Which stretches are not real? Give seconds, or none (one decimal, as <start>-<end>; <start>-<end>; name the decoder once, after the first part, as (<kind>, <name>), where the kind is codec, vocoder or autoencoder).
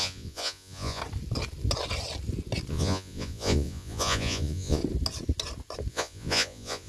0.0-1.0 (vocoder, Vocos); 2.7-4.8; 5.9-6.9